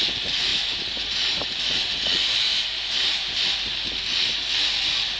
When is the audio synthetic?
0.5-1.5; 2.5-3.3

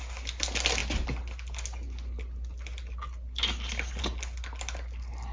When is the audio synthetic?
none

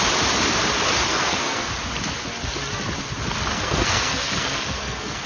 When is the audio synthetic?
1.1-1.7; 3.5-5.3